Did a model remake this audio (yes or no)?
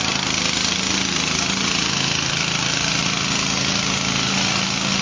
no